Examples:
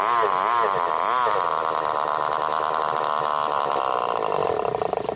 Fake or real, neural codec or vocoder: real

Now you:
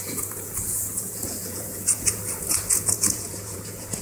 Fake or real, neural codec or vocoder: fake, vocoder, Vocos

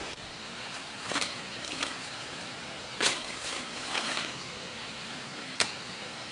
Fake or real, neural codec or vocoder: fake, codec, SNAC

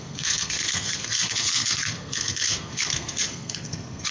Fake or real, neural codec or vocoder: fake, codec, SNAC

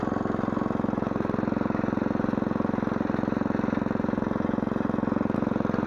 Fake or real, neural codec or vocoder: real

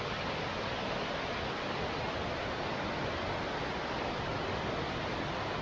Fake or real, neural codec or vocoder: real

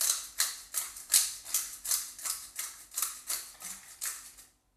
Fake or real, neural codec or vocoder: real